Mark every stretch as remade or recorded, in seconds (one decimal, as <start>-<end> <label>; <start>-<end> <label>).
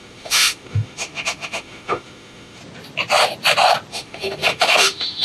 0.0-2.6 remade; 2.6-3.9 recorded; 3.9-5.2 remade